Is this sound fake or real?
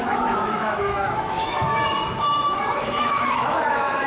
fake